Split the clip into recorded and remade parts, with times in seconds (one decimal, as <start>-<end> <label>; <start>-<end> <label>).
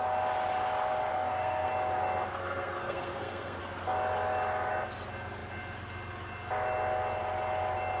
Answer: 0.0-1.1 recorded; 1.1-1.7 remade; 1.7-2.4 recorded; 2.4-3.6 remade; 3.6-8.0 recorded